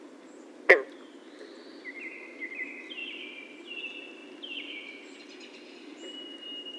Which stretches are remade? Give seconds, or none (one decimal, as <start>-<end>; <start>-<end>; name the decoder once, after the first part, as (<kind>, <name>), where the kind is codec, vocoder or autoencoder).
none